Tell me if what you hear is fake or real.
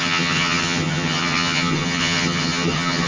fake